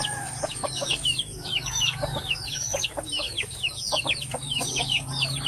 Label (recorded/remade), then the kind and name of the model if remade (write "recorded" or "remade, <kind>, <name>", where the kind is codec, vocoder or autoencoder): remade, codec, DAC